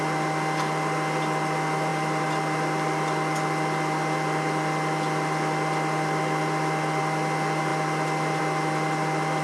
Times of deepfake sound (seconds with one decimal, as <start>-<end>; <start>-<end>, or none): none